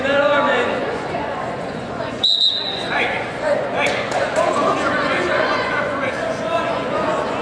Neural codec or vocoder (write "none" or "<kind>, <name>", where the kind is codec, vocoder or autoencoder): vocoder, Vocos